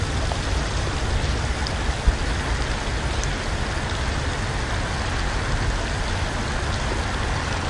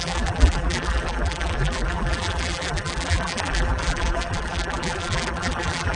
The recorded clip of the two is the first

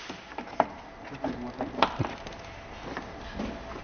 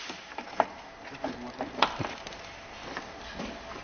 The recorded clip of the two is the first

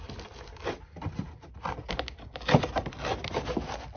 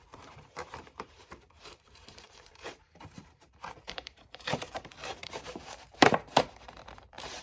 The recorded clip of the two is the first